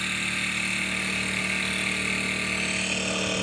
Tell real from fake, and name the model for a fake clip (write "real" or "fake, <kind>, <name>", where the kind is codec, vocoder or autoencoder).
real